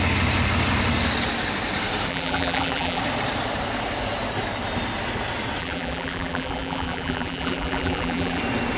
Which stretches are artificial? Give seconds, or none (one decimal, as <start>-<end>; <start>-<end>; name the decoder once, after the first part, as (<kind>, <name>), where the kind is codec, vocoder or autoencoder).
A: 2.1-3.0 (vocoder, BigVGAN v2); 5.6-8.4